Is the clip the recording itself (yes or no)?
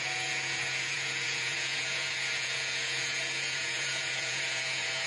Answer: no